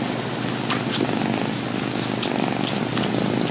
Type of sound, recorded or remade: recorded